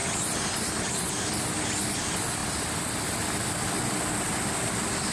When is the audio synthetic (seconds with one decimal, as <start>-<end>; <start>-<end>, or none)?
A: none